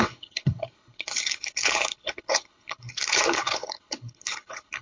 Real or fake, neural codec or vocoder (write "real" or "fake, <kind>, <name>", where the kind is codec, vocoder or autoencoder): fake, codec, HILCodec